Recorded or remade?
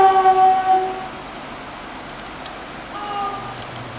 recorded